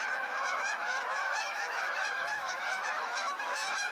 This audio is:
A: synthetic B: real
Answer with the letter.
A